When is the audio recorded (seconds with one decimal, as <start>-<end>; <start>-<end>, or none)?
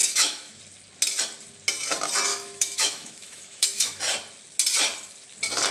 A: 0.6-2.3; 4.0-5.7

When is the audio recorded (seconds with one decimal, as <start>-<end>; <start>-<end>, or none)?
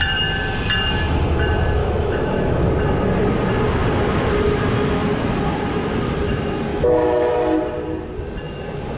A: 0.0-1.8; 2.7-6.7; 7.3-9.0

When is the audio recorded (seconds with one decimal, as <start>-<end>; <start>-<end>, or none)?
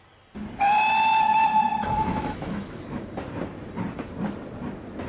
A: 0.0-1.7; 3.0-5.1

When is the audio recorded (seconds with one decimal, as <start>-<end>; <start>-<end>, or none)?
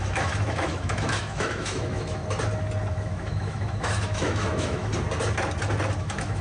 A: 2.2-2.9; 4.9-6.0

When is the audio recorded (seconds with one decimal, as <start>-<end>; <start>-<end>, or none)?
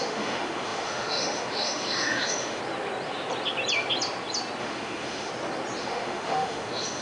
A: 2.6-4.6; 5.3-5.8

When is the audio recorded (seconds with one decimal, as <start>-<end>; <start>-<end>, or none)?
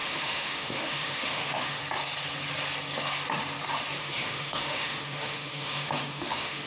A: 1.8-4.0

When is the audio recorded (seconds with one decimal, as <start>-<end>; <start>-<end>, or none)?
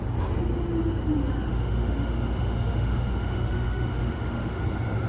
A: 0.0-1.5; 4.6-5.1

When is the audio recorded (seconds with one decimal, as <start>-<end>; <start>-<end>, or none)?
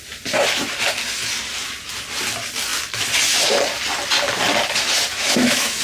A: 0.0-5.1